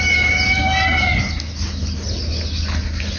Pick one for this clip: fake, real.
real